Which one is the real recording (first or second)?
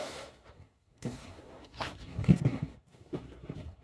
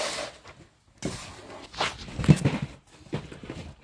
second